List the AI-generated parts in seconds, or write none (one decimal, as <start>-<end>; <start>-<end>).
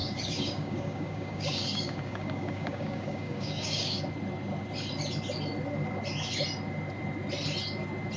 0.0-4.0